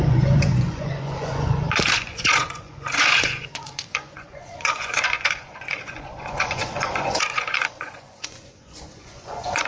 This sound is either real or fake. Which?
fake